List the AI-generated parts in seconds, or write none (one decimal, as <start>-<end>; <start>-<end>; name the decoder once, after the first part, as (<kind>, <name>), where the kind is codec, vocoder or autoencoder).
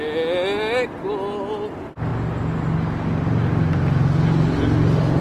none